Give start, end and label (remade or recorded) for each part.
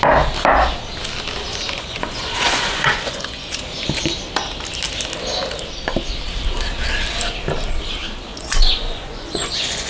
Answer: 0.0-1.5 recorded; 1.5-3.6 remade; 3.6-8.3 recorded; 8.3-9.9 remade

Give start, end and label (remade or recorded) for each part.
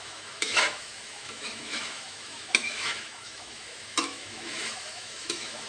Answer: 0.0-5.7 remade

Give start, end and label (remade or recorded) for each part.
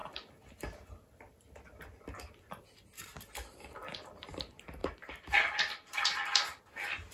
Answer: 0.0-3.8 recorded; 3.8-4.3 remade; 4.3-4.8 recorded; 4.8-6.6 remade; 6.6-7.1 recorded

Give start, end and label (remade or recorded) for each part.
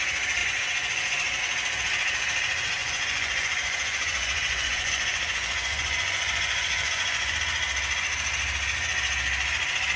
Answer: 0.0-0.4 recorded; 0.4-1.4 remade; 1.4-2.8 recorded; 2.8-7.4 remade; 7.4-10.0 recorded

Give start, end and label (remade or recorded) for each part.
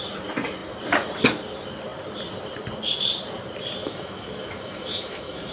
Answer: 0.0-3.8 recorded; 3.8-5.5 remade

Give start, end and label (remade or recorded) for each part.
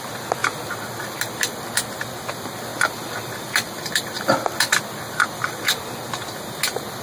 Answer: 0.0-0.4 recorded; 0.4-1.6 remade; 1.6-2.7 recorded; 2.7-5.8 remade; 5.8-7.0 recorded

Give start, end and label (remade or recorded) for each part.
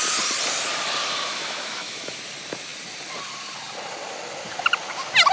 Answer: 0.0-1.3 recorded; 1.3-2.2 remade; 2.2-5.3 recorded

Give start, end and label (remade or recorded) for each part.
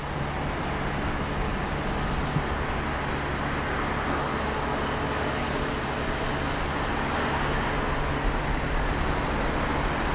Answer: 0.0-10.1 recorded